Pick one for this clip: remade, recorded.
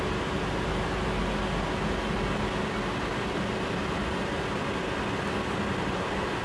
recorded